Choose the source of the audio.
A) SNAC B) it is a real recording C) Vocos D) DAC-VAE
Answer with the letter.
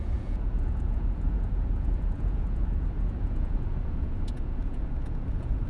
C